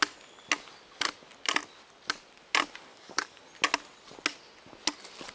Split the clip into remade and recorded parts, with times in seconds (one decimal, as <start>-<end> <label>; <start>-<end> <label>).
0.0-2.9 recorded; 2.9-3.4 remade; 3.4-5.3 recorded